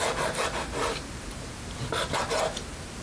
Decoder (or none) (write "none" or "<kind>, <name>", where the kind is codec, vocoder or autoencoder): none